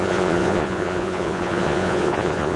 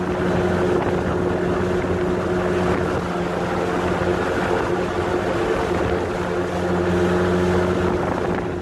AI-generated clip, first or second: first